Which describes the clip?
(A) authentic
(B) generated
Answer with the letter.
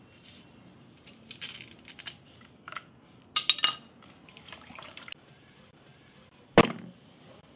A